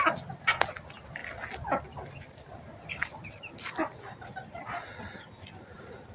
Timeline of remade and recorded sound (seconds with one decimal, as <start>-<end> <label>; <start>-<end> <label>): 0.0-6.1 recorded